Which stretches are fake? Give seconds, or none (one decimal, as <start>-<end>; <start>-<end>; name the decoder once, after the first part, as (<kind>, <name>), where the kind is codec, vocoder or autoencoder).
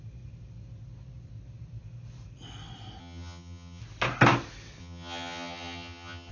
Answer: 3.0-3.8 (vocoder, HiFi-GAN); 4.8-6.3